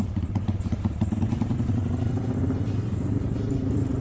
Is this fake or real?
fake